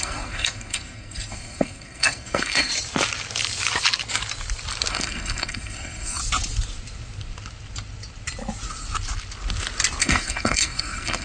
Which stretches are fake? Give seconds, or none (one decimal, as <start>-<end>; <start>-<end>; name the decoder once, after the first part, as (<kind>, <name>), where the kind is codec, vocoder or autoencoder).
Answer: 0.0-2.7 (codec, SNAC); 4.9-6.2; 10.0-11.2